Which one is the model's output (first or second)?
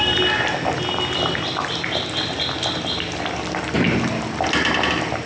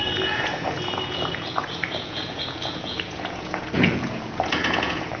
second